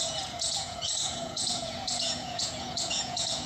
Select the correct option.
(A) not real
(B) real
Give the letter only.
A